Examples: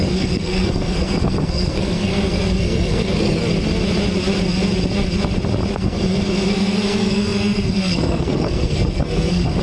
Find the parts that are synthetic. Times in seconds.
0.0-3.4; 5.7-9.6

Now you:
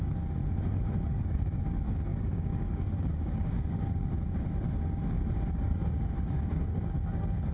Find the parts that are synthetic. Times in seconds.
0.0-0.4; 1.1-5.0; 5.5-7.5

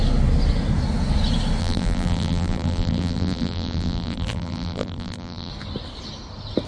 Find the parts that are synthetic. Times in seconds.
1.6-5.5

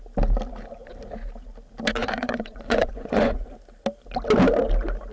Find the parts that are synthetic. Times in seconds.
2.0-3.5

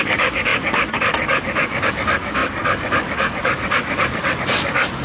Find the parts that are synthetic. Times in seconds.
0.0-5.0

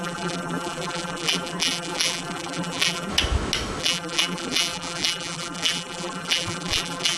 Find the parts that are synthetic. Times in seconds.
0.0-3.1; 3.8-7.2